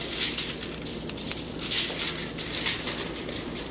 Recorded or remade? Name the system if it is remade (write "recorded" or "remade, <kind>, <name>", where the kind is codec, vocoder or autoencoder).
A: recorded